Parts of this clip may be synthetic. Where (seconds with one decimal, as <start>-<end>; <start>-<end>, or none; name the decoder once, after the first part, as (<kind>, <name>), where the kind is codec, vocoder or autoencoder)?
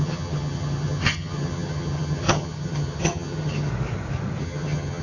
0.0-3.7 (vocoder, HiFi-GAN); 4.4-5.0